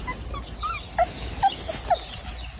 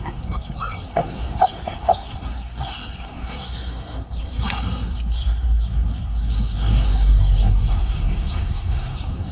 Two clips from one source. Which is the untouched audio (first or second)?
first